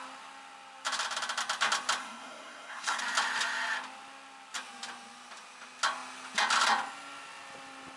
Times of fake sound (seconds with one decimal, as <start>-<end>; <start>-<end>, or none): 2.0-3.0